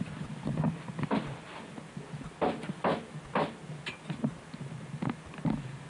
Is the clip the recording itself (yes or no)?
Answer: yes